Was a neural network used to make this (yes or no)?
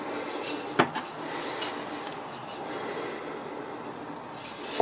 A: no